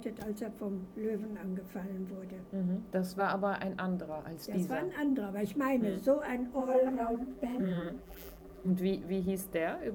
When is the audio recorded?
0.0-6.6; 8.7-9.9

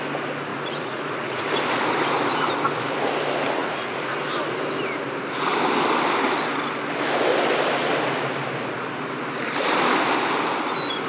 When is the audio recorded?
0.0-0.5; 1.4-3.6; 4.2-11.1

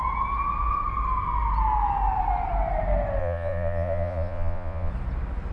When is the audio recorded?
0.0-3.2; 4.9-5.5